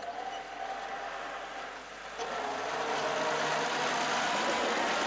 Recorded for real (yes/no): yes